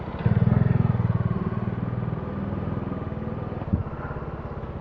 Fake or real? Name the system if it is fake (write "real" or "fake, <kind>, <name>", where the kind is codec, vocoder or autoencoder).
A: real